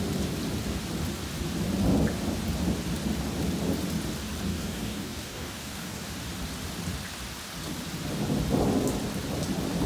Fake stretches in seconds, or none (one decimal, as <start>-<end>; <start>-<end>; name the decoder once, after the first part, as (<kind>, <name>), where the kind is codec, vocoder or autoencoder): 4.5-6.1 (codec, DAC)